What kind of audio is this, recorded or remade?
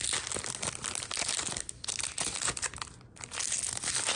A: recorded